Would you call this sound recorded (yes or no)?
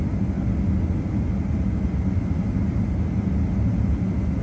yes